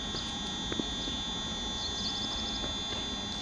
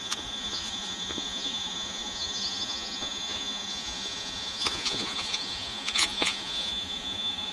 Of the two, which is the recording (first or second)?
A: first